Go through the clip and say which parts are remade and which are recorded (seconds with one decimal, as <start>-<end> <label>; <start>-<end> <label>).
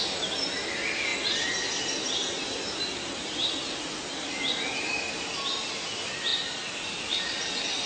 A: 0.0-7.9 recorded